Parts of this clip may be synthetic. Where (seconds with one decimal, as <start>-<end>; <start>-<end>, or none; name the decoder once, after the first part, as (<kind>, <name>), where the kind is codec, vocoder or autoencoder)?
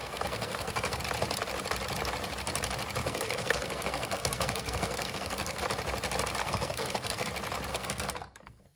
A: 0.0-1.0 (codec, SNAC); 3.0-5.6; 6.4-7.3; 7.7-8.8